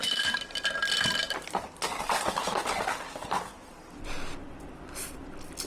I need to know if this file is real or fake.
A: real